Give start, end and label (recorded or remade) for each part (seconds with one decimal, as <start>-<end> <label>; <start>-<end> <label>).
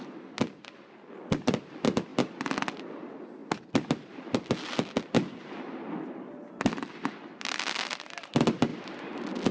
0.0-9.5 recorded